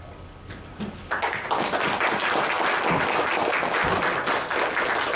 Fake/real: real